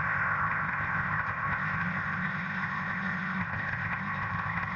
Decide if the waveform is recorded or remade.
remade